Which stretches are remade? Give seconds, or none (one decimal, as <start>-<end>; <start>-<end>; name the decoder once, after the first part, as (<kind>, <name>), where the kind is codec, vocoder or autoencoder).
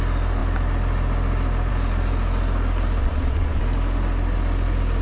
3.0-3.6 (vocoder, Vocos)